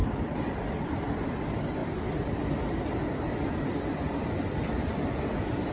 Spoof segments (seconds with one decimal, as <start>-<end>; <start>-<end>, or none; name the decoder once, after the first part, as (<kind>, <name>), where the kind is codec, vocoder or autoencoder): 0.0-1.8 (vocoder, BigVGAN v2); 4.1-5.7